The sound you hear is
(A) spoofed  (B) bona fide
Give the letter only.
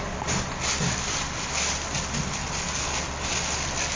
B